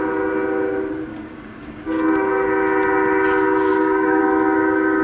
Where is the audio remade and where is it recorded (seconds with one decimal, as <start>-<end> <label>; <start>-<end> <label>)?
0.0-1.1 recorded; 1.1-1.8 remade; 1.8-3.7 recorded; 3.7-4.2 remade; 4.2-5.0 recorded